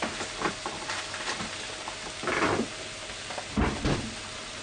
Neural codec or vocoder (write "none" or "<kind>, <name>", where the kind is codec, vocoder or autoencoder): none